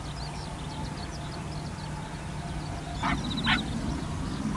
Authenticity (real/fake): real